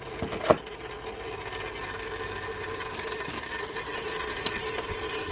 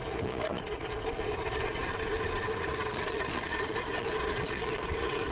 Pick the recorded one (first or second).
first